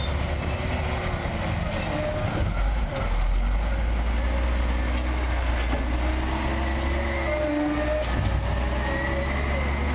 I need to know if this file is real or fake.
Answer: real